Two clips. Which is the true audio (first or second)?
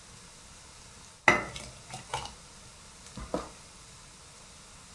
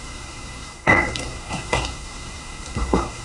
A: first